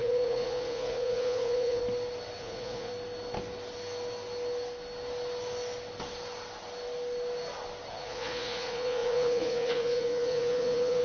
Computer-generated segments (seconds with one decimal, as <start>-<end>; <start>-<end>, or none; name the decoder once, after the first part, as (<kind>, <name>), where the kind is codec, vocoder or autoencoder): 0.0-1.8 (vocoder, Vocos); 2.4-2.9; 7.9-11.0